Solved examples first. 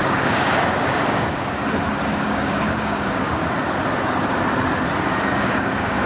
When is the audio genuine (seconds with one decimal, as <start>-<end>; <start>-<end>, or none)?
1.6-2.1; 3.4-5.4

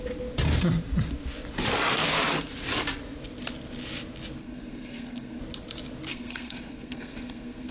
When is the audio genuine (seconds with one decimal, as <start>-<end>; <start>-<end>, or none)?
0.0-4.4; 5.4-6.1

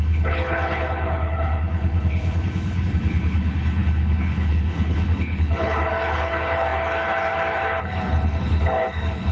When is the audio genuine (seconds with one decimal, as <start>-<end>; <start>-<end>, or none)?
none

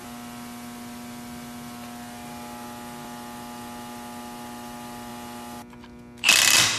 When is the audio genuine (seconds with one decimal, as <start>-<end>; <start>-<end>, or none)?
0.0-6.8

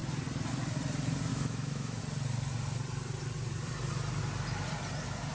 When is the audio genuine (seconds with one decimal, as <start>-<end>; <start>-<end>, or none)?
0.0-1.3; 2.0-5.3

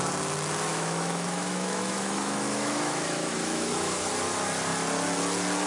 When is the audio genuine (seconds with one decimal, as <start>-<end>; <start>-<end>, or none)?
0.0-0.7; 4.1-5.7

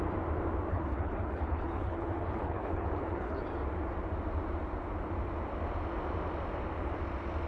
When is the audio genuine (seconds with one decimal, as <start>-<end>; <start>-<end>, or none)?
0.0-0.7; 3.4-7.5

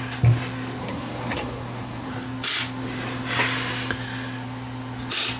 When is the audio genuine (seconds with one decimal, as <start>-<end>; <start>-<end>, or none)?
0.0-0.8; 2.1-5.4